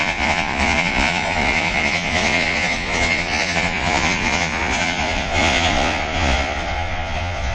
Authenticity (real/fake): fake